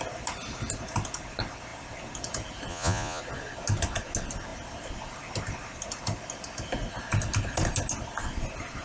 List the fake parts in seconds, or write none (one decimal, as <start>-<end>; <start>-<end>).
2.7-3.2